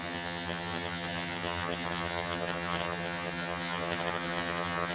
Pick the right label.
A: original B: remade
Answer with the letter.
B